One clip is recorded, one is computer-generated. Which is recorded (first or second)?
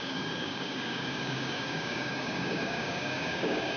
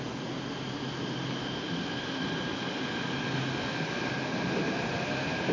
second